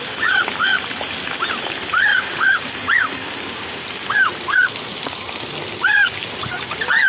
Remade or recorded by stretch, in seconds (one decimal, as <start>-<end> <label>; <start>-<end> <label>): 0.0-7.1 remade